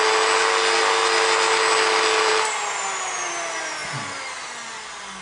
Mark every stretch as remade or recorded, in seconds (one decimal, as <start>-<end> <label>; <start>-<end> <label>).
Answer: 0.0-5.2 recorded